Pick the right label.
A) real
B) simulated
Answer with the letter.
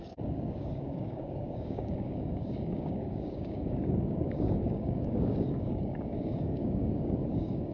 B